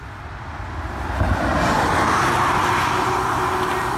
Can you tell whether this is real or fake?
real